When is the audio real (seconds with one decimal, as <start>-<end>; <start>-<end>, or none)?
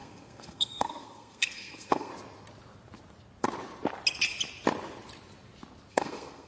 2.1-5.9